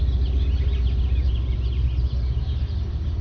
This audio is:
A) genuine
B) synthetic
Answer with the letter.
A